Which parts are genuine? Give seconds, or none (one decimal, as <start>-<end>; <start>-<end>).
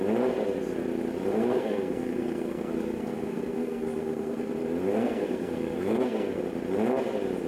0.0-1.3; 4.5-4.9; 6.4-7.5